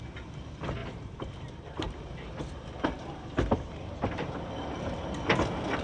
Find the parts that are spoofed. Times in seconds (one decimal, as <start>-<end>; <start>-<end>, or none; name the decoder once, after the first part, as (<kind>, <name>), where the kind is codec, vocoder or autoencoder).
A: 0.8-4.3 (vocoder, BigVGAN v2)